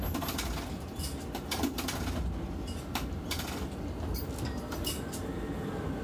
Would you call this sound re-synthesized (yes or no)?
no